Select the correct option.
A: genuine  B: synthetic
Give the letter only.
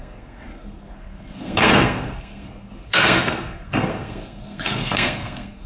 B